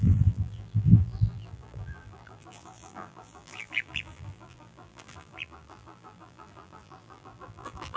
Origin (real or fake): fake